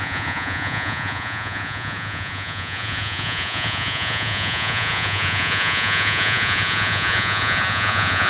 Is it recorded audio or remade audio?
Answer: remade